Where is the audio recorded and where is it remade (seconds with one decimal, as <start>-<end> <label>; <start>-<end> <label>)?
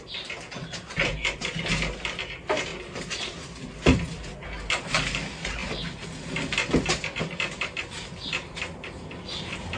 0.0-9.8 recorded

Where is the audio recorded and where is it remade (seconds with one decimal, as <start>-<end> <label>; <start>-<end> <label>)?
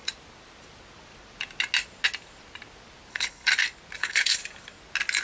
0.0-3.1 recorded; 3.1-3.5 remade; 3.5-4.0 recorded; 4.0-4.4 remade; 4.4-5.2 recorded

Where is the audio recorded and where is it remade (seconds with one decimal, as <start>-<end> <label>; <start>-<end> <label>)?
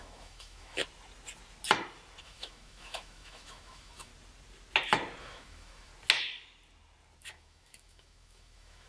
0.0-0.8 remade; 0.8-2.2 recorded; 2.2-4.1 remade; 4.1-5.2 recorded; 5.2-5.9 remade; 5.9-7.2 recorded; 7.2-8.9 remade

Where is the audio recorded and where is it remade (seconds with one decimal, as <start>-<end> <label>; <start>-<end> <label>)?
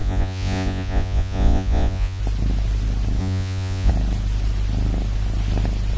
0.0-2.2 remade; 2.2-3.2 recorded; 3.2-3.9 remade; 3.9-6.0 recorded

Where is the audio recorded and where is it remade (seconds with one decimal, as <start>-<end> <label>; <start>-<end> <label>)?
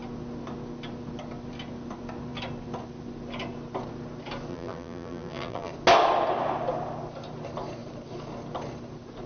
0.0-4.5 recorded; 4.5-5.7 remade; 5.7-9.3 recorded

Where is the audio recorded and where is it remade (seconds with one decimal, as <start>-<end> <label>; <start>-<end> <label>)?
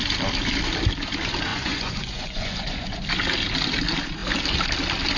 0.0-1.5 recorded; 1.5-3.0 remade; 3.0-5.2 recorded